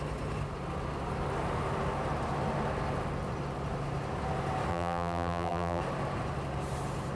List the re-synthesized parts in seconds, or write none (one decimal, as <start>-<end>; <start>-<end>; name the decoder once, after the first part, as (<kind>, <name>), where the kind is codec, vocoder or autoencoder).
4.7-5.8 (vocoder, BigVGAN v2)